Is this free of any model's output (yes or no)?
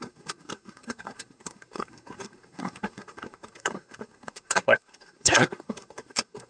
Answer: no